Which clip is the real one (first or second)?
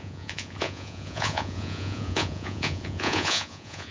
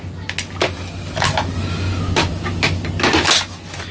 second